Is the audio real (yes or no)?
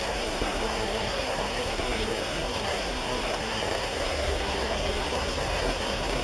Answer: no